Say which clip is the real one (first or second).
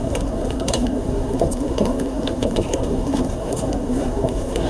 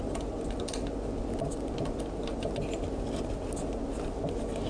second